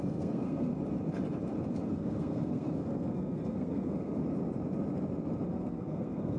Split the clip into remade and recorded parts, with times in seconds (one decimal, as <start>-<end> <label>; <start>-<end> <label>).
0.0-0.7 remade; 0.7-1.9 recorded; 1.9-4.2 remade; 4.2-5.5 recorded; 5.5-6.4 remade